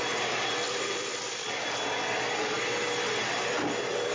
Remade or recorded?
recorded